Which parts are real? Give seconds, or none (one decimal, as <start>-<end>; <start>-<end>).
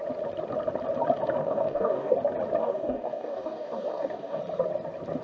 0.0-1.4; 2.1-2.6; 4.4-5.2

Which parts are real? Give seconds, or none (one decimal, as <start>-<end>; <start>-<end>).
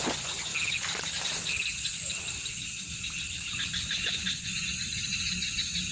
0.5-4.0; 5.1-5.9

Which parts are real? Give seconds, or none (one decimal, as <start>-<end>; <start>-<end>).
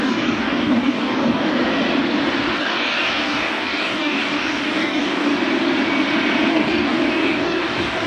1.5-2.6; 5.3-6.5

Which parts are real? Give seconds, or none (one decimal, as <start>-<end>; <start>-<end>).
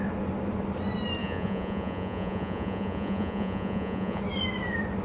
0.0-1.2; 4.2-5.0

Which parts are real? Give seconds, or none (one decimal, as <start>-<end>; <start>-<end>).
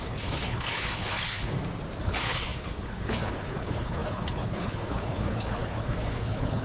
1.5-2.0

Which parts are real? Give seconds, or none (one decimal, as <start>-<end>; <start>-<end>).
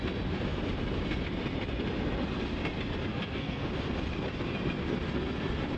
0.0-3.1; 3.7-5.8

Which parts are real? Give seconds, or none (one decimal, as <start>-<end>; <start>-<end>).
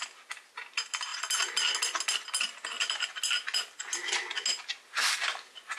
0.0-5.8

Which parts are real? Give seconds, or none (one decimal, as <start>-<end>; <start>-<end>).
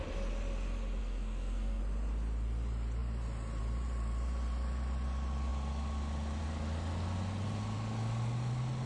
0.0-1.0; 1.8-8.9